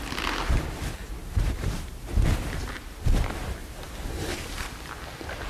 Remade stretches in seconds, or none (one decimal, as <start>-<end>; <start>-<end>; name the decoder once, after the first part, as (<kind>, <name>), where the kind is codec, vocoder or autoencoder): 1.0-2.1 (vocoder, BigVGAN v2); 3.6-4.5